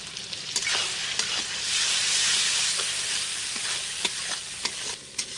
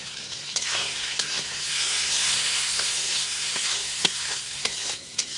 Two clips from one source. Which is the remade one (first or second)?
second